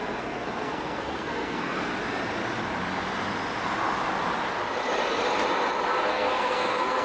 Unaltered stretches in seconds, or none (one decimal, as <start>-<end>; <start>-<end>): 1.9-6.1